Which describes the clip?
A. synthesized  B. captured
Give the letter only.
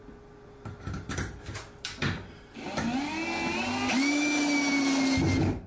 B